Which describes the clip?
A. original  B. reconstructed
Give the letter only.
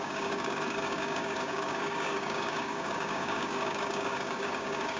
B